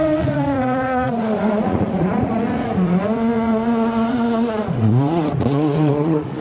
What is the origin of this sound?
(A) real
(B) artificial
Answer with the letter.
B